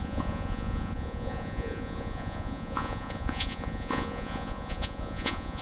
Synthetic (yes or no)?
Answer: yes